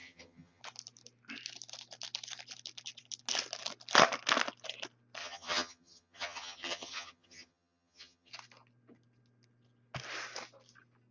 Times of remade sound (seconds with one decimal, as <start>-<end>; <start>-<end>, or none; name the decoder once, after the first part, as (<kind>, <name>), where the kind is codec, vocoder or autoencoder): 0.0-0.6 (vocoder, HiFi-GAN); 5.2-8.3